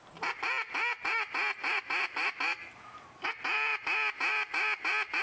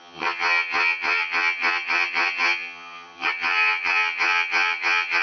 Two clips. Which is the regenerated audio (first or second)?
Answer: second